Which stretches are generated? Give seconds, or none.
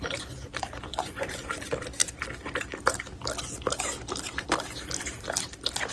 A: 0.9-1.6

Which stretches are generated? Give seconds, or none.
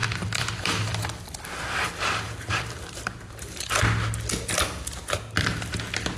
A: 0.0-3.7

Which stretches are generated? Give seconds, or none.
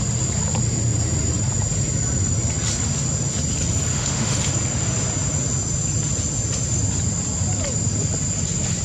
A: 3.9-4.5